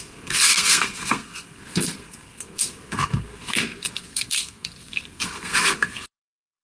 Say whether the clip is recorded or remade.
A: remade